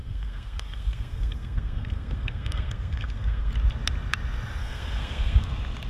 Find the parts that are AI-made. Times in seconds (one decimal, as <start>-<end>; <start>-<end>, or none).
0.0-3.5; 4.6-5.5